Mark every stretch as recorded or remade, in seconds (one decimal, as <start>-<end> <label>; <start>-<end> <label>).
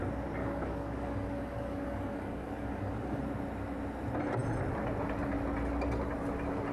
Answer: 0.0-0.4 recorded; 0.4-3.2 remade; 3.2-6.7 recorded